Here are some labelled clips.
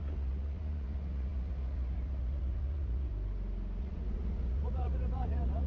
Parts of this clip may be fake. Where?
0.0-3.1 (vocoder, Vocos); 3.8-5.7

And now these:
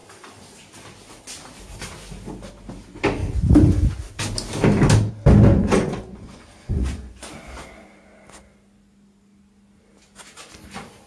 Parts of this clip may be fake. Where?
5.5-7.3 (vocoder, Vocos)

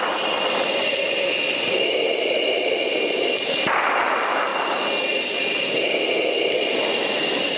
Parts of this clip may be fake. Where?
none

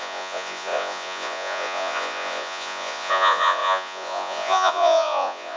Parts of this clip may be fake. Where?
0.0-5.6 (vocoder, Vocos)

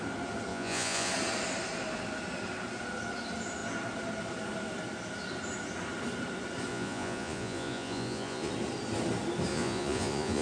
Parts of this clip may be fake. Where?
0.5-1.1 (vocoder, Vocos); 6.7-8.5; 9.5-10.4

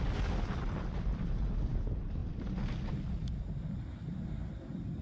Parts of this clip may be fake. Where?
none

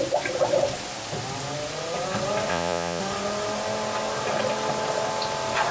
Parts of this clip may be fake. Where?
2.5-3.0 (vocoder, Vocos)

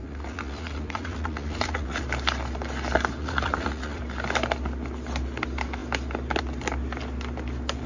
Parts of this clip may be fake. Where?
0.0-2.0 (vocoder, Vocos); 3.2-4.0